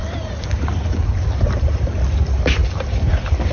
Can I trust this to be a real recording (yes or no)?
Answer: yes